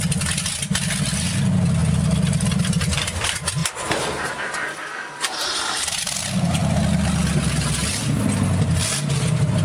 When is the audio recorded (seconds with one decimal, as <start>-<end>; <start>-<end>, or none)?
0.0-3.6; 4.3-9.6